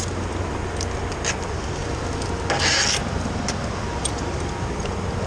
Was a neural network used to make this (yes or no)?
no